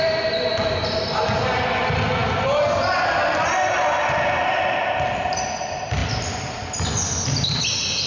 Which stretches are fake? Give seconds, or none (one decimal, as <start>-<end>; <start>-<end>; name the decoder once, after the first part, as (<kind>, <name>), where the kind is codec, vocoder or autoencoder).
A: none